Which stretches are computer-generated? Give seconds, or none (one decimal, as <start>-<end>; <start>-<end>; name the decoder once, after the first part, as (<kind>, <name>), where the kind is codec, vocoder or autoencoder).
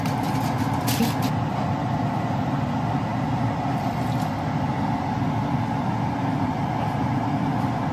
none